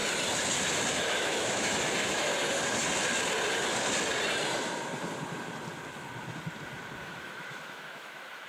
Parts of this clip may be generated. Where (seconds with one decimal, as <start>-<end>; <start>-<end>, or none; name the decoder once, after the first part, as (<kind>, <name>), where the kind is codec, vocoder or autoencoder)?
0.9-2.3 (autoencoder, DAC-VAE); 7.0-8.5

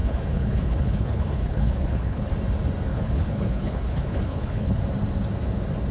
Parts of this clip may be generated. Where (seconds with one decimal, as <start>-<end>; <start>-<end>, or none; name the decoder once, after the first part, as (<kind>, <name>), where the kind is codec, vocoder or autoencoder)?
0.0-2.3 (codec, HILCodec); 2.9-4.8